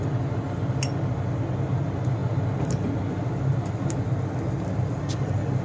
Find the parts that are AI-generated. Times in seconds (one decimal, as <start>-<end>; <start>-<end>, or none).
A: none